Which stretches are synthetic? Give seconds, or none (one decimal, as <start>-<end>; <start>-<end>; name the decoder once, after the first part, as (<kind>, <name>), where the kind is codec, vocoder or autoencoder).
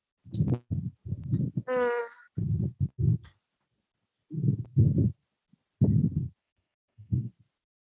6.4-7.3 (codec, SNAC)